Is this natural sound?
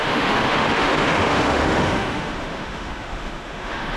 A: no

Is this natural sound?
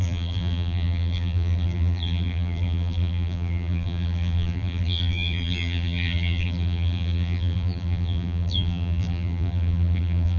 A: no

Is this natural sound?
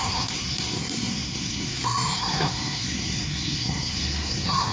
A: no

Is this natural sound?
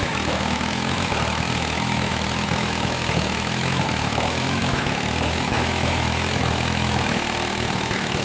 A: no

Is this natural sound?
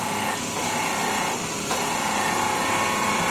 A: yes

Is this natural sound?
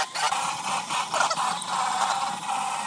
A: yes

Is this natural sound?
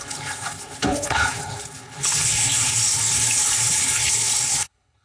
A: no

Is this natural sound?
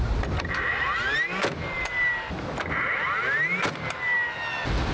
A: yes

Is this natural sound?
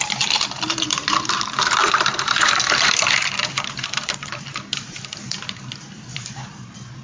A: no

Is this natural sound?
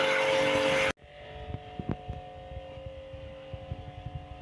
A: yes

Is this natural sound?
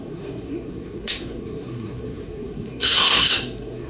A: no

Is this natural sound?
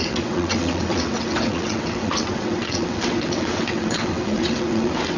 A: no